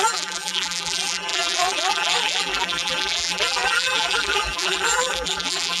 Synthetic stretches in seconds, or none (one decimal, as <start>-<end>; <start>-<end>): 0.0-5.8